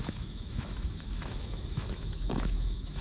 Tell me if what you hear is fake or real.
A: fake